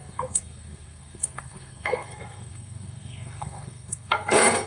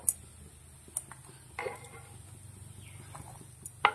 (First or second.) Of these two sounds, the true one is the second